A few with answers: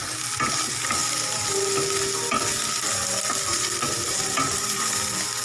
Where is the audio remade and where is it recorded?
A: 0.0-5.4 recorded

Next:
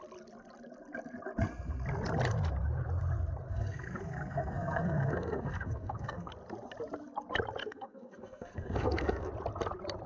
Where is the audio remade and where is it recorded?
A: 0.0-3.5 recorded; 3.5-6.3 remade; 6.3-7.6 recorded; 7.6-9.3 remade; 9.3-10.1 recorded

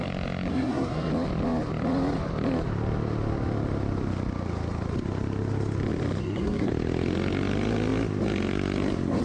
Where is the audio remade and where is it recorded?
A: 0.0-0.5 recorded; 0.5-1.1 remade; 1.1-6.2 recorded; 6.2-6.7 remade; 6.7-9.2 recorded

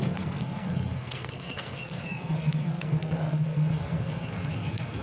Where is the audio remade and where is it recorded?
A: 0.0-5.0 remade

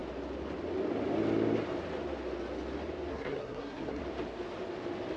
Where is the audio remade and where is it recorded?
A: 0.0-3.1 recorded; 3.1-4.0 remade; 4.0-5.2 recorded

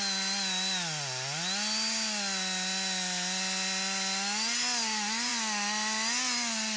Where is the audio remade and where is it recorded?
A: 0.0-6.8 recorded